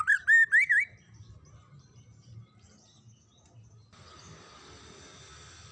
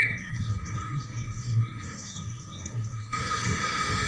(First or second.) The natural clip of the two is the first